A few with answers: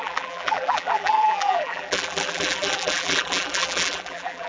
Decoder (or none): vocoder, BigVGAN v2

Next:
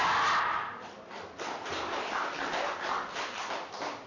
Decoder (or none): none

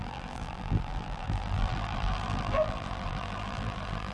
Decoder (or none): vocoder, BigVGAN v2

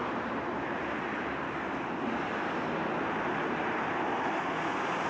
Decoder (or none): none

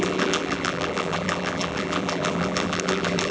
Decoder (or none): vocoder, BigVGAN v2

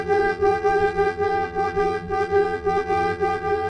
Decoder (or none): vocoder, BigVGAN v2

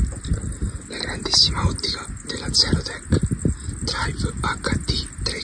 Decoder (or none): none